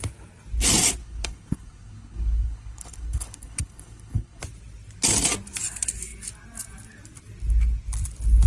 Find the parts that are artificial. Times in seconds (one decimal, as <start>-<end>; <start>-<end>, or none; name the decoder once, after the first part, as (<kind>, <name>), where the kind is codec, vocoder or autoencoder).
1.0-4.4 (codec, HILCodec)